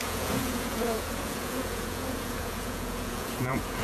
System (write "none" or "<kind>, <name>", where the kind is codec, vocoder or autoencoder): vocoder, Vocos